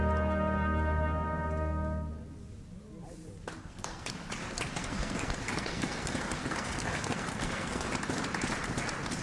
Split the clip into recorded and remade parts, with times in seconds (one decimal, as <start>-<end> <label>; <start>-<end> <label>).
0.0-3.6 recorded; 3.6-4.2 remade; 4.2-4.7 recorded; 4.7-7.9 remade; 7.9-9.2 recorded